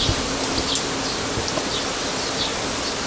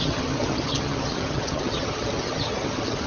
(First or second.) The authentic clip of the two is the first